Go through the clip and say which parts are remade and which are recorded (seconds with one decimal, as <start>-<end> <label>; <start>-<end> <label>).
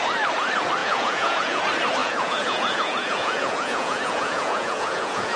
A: 0.0-0.8 recorded; 0.8-1.6 remade; 1.6-2.0 recorded; 2.0-5.4 remade